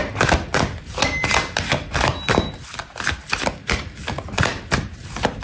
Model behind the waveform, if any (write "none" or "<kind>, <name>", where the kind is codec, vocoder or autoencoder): none